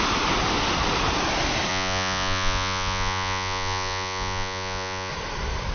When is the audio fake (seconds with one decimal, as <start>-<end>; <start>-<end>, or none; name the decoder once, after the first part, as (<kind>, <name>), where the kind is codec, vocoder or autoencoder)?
1.7-5.1 (vocoder, Vocos)